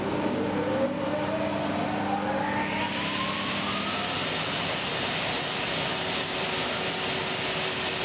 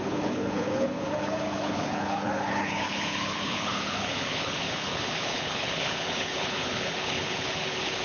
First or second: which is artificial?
second